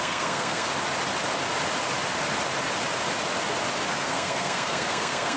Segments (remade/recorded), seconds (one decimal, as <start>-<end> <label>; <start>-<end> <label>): 0.0-0.7 remade; 0.7-3.9 recorded; 3.9-5.4 remade